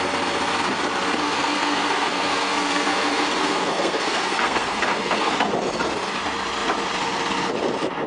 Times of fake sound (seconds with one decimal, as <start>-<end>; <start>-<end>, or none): 1.2-5.3